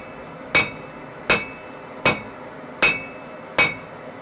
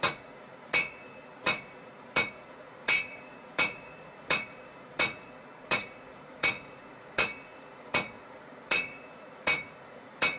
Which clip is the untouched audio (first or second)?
first